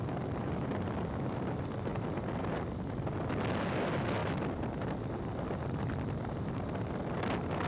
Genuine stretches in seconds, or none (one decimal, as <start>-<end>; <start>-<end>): 0.0-1.9; 2.9-7.7